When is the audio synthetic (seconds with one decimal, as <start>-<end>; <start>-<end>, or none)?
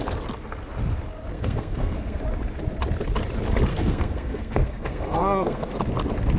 1.3-2.2; 3.7-5.7